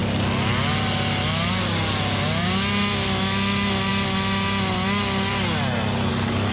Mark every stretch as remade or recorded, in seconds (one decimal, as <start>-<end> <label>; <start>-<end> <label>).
0.0-6.5 recorded